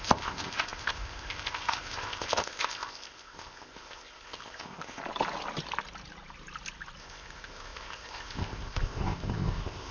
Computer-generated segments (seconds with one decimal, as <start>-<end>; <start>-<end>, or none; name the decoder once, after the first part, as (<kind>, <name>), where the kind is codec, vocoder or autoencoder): 0.0-5.0 (codec, ZipCodec); 7.0-9.9